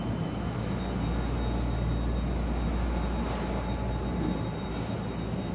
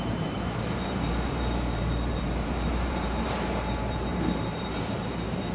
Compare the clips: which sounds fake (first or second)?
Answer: second